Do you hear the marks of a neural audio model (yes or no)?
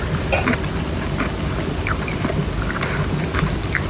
no